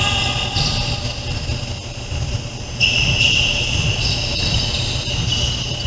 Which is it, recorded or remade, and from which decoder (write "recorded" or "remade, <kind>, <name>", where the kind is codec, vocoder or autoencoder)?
recorded